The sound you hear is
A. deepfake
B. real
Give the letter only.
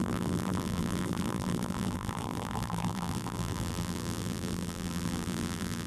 A